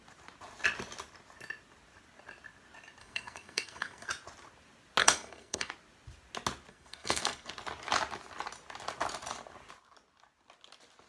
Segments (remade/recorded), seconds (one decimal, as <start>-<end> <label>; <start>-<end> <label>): 0.0-3.0 recorded; 3.0-4.1 remade; 4.1-5.0 recorded; 5.0-5.7 remade; 5.7-6.7 recorded; 6.7-7.5 remade; 7.5-11.1 recorded